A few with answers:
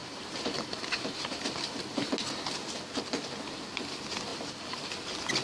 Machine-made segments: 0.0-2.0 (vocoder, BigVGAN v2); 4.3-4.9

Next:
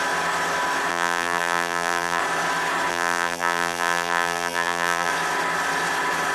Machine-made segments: 0.9-2.2 (vocoder, BigVGAN v2); 2.9-5.1